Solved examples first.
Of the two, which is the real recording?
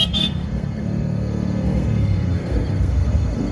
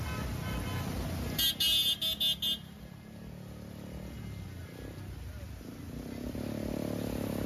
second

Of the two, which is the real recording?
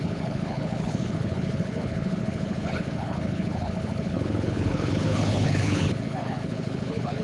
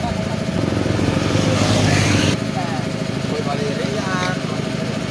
second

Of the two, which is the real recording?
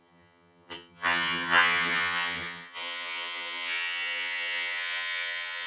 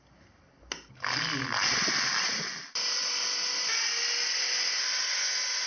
second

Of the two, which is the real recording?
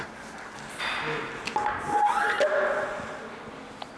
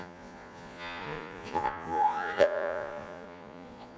first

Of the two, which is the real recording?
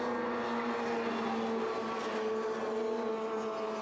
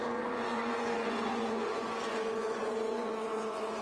first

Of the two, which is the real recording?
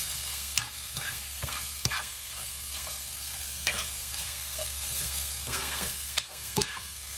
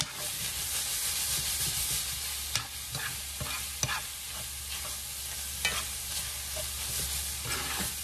second